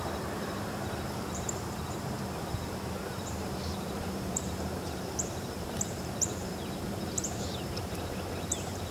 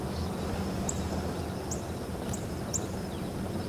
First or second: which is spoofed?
first